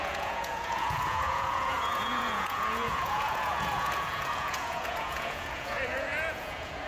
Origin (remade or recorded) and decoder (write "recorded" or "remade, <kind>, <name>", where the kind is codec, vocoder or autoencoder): remade, vocoder, Vocos